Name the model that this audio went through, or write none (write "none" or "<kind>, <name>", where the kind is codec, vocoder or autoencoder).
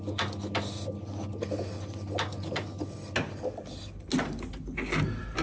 none